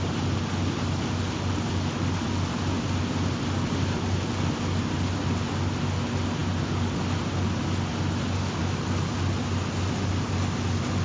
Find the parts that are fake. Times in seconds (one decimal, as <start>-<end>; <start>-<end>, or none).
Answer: none

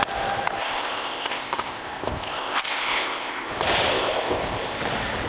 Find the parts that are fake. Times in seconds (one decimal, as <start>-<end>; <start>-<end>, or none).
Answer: 0.6-3.5; 3.9-4.8